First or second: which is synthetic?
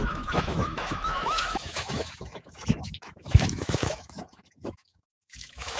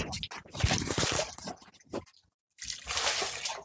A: first